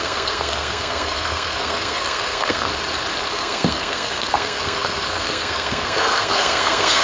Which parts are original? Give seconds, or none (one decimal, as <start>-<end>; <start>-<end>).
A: 2.7-3.3